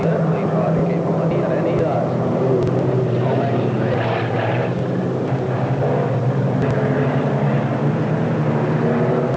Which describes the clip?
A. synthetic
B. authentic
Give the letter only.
B